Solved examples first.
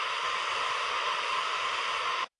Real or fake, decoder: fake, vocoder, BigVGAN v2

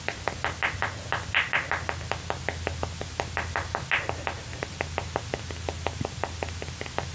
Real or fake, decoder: real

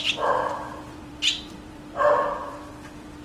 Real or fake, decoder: fake, vocoder, BigVGAN v2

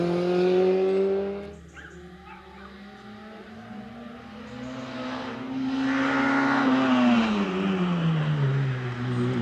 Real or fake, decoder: real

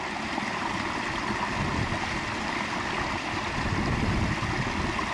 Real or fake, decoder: real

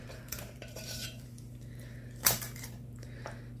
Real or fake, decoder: fake, vocoder, BigVGAN v2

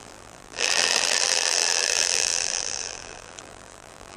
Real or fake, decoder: fake, vocoder, BigVGAN v2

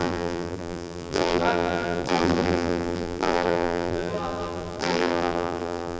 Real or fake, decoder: fake, vocoder, BigVGAN v2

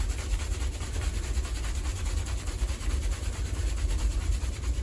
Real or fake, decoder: fake, vocoder, BigVGAN v2